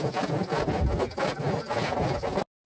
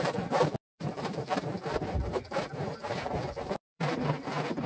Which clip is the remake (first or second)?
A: second